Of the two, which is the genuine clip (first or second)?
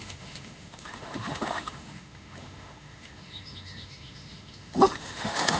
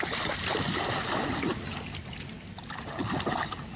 second